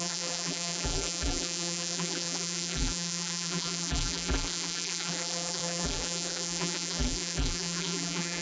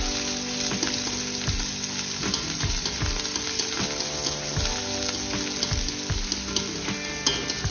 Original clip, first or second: second